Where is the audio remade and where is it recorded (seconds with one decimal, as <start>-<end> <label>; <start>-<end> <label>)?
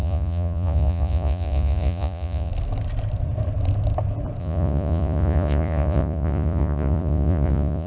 0.0-2.5 remade; 2.5-4.4 recorded; 4.4-7.9 remade